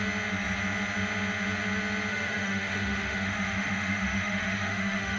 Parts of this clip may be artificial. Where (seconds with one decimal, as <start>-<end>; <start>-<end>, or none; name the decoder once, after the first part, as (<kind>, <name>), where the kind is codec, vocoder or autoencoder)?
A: 2.1-5.2 (autoencoder, DAC-VAE)